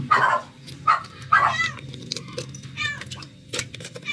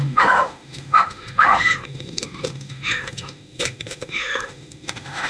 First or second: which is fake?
second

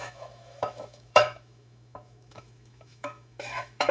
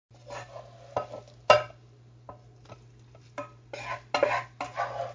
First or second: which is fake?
first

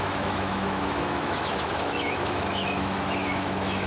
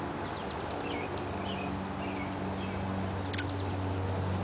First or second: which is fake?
first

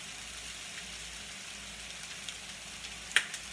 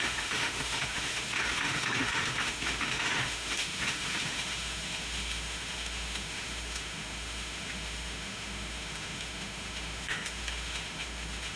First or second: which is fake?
second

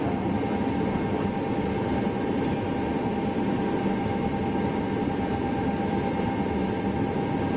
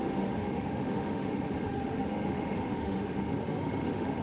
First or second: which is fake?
second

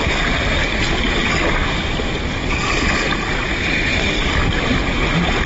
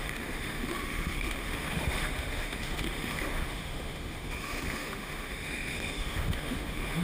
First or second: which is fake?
second